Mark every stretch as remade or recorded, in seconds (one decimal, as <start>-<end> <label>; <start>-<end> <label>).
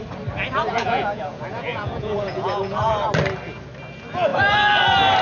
0.0-0.6 recorded; 0.6-2.9 remade; 2.9-5.2 recorded